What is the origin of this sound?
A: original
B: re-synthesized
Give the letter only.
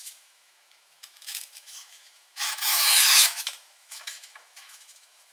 B